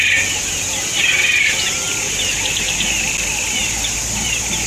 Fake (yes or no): no